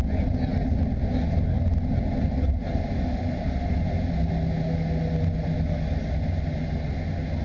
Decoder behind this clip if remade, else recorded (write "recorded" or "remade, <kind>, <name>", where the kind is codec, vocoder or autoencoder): recorded